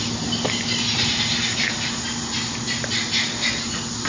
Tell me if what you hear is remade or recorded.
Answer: recorded